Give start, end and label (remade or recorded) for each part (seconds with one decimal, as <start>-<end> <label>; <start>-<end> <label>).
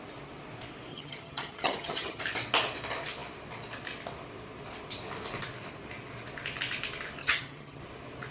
0.0-0.9 recorded; 0.9-2.2 remade; 2.2-7.2 recorded; 7.2-7.8 remade; 7.8-8.3 recorded